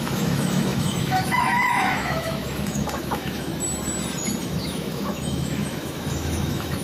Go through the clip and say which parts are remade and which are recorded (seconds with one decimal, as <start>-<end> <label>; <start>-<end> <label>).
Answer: 0.0-3.5 remade; 3.5-4.4 recorded; 4.4-6.8 remade